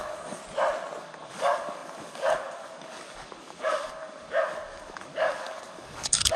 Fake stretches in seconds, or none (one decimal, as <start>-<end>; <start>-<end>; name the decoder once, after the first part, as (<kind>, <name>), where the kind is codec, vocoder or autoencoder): 0.0-0.4 (codec, DAC); 1.0-6.4